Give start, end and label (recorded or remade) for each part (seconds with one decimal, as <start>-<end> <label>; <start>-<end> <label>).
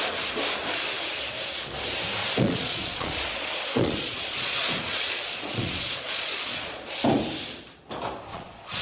0.0-2.2 recorded; 2.2-6.9 remade; 6.9-8.3 recorded; 8.3-8.8 remade